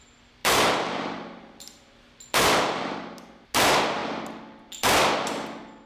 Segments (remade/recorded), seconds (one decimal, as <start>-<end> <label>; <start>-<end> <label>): 0.0-5.9 recorded